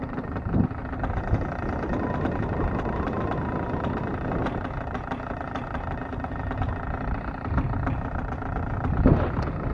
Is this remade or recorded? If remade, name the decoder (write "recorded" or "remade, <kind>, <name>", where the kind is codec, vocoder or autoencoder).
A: recorded